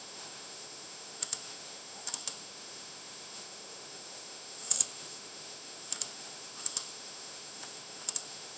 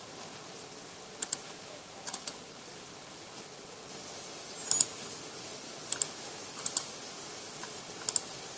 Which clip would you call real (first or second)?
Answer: second